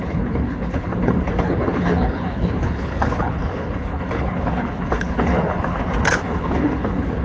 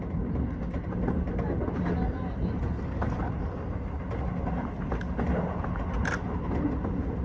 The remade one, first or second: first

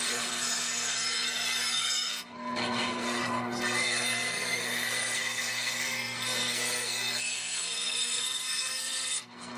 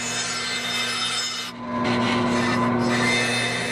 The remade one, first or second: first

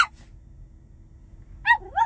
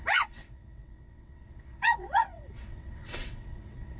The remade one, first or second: second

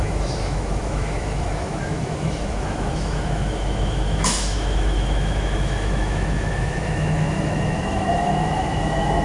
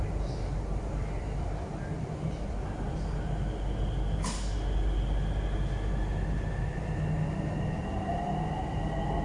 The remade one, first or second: first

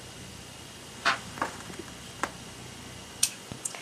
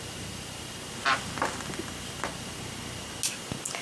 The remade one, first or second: first